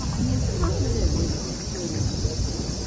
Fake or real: real